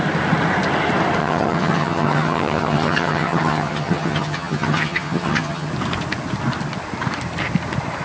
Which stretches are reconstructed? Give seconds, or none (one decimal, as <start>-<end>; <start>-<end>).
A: 1.2-5.7

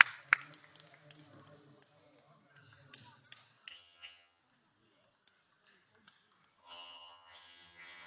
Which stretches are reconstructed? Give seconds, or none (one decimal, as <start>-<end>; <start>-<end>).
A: 3.7-4.4; 6.6-8.1

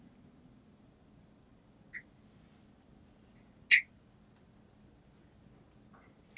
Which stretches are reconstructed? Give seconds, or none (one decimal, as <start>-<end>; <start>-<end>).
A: none

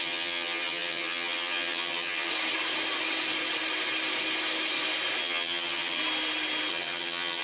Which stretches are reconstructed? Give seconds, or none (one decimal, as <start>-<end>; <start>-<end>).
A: 0.0-2.3; 5.2-6.0; 6.7-7.4

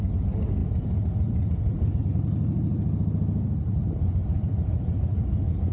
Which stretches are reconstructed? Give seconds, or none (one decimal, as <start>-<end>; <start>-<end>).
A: none

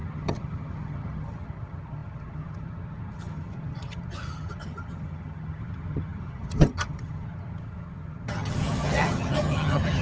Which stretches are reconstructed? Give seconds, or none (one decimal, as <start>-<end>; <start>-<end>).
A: 0.0-10.0

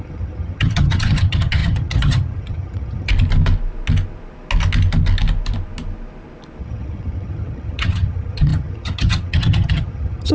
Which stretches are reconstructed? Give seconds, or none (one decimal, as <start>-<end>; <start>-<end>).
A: 0.0-3.1; 6.6-10.3